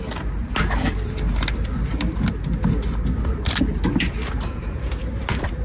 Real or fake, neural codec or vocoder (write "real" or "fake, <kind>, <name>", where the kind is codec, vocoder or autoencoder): real